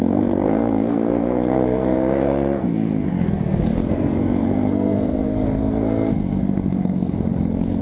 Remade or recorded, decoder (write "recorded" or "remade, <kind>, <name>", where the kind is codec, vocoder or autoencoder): remade, codec, SNAC